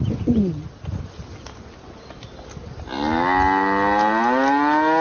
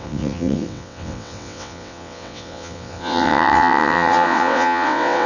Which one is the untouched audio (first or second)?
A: first